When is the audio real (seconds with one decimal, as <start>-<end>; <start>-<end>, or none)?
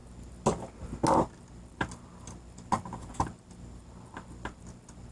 0.0-5.1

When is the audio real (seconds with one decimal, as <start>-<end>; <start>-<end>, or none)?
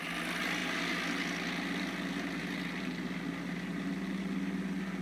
0.0-5.0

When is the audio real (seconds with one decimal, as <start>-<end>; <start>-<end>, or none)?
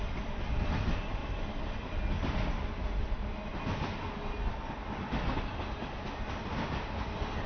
0.0-7.5